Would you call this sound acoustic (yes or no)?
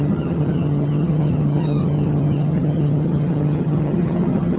no